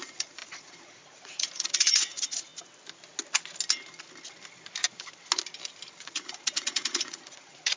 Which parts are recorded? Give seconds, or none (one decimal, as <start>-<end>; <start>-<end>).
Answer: 2.5-6.0